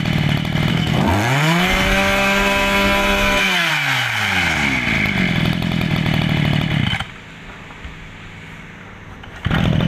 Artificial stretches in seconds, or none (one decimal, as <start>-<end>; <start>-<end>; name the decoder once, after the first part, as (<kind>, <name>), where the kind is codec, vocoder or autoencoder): 0.7-3.7 (codec, SNAC)